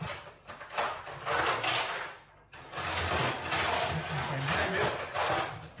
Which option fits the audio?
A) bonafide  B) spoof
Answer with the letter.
A